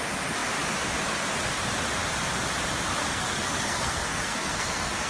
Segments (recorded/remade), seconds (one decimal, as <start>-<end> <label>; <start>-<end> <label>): 0.0-3.0 recorded; 3.0-5.1 remade